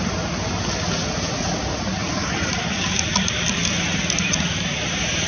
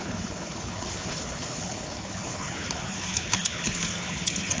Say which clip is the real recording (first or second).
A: first